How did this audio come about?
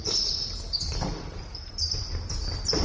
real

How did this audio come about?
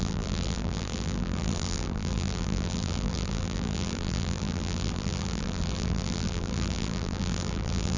fake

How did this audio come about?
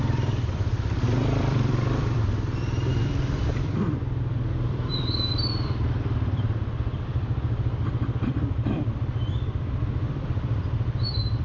fake